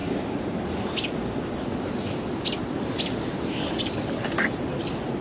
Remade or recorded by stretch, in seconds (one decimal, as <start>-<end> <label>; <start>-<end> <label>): 0.0-5.2 recorded